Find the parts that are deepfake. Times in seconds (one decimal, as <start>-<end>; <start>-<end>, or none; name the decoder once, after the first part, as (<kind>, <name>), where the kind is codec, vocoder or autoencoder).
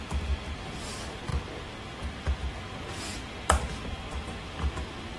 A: none